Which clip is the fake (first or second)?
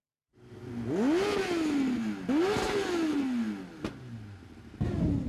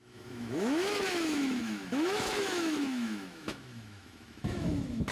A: second